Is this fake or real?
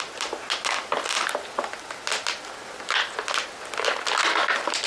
real